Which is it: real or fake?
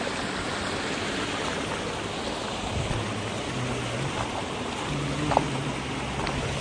real